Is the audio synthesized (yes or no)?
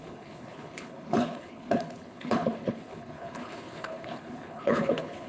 yes